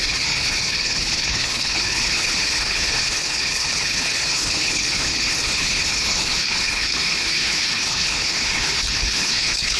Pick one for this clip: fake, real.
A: fake